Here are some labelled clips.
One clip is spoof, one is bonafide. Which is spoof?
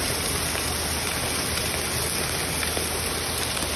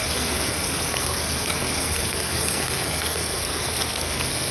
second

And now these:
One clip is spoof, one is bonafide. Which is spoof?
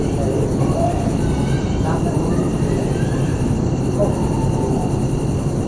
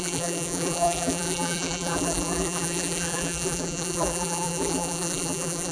second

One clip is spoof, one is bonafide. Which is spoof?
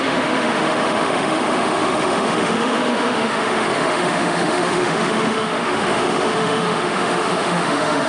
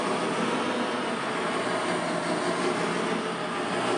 first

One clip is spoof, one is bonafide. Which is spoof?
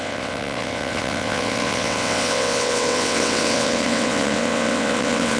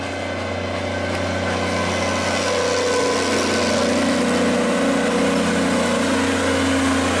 first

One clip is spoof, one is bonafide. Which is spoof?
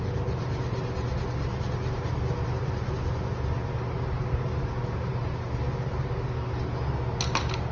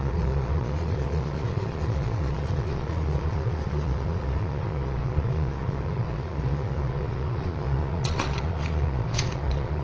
second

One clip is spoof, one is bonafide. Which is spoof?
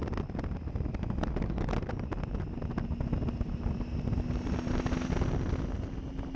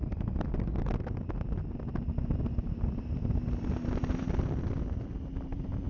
second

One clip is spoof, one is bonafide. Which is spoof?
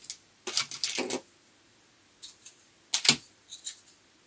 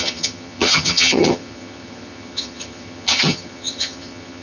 second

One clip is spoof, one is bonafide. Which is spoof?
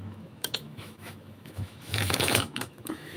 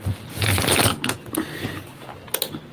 first